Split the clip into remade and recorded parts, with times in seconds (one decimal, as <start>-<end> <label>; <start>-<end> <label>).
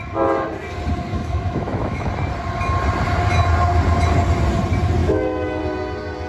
0.0-1.1 recorded; 1.1-2.1 remade; 2.1-5.0 recorded; 5.0-5.6 remade; 5.6-6.3 recorded